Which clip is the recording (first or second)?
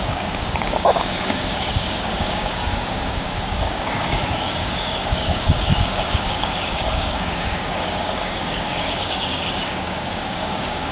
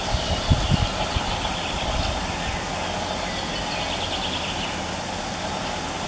second